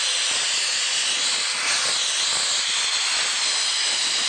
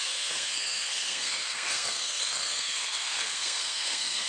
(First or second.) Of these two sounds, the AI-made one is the second